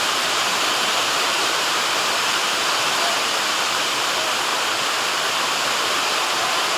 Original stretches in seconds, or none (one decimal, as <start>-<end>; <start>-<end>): 2.4-3.5; 4.5-5.0